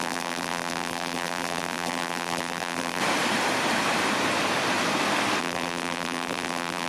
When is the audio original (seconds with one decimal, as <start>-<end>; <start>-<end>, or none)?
3.0-5.4